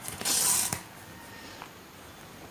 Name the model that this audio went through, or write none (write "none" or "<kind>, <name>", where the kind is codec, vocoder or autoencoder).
none